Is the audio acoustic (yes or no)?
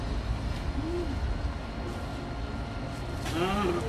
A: yes